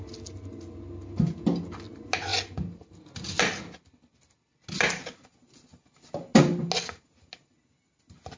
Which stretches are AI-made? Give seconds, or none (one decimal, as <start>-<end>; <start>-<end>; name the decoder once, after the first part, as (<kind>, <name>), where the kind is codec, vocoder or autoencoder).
none